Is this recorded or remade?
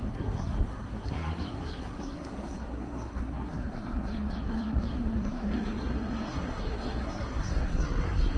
remade